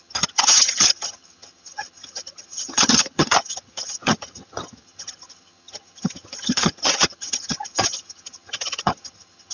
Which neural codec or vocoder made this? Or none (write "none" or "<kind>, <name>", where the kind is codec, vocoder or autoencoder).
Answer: vocoder, HiFi-GAN